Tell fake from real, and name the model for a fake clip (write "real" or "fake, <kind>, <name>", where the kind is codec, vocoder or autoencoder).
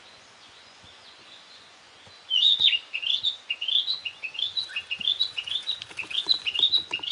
fake, vocoder, Vocos